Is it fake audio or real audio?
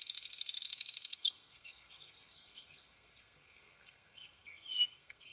fake